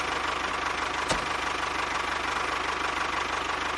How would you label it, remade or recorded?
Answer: recorded